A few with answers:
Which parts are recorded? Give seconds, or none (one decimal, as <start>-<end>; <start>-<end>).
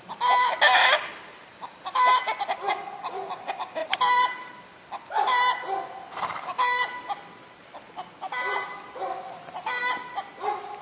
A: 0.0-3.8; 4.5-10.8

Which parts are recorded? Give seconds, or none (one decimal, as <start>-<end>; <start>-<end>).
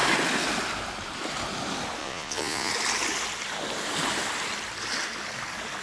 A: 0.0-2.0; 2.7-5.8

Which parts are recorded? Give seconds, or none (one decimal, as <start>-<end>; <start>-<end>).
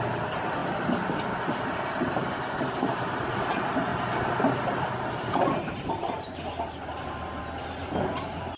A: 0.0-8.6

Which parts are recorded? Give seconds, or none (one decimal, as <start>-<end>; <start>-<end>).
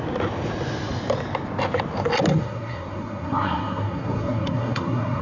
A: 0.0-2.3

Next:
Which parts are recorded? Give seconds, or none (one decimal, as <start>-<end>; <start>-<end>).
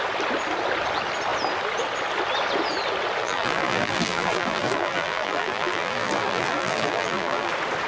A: 0.0-3.2; 7.5-7.9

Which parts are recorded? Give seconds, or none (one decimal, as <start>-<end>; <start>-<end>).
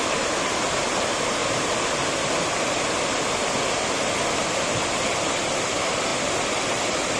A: 0.0-6.1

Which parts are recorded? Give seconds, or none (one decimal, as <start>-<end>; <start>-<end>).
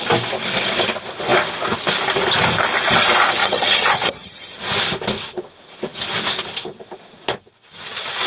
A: 0.0-3.4; 4.5-8.3